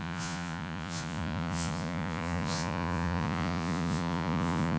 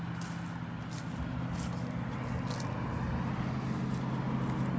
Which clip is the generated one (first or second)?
first